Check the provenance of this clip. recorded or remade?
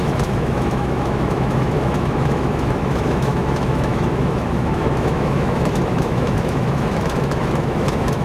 remade